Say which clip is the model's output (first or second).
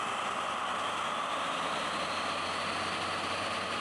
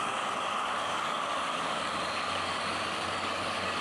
second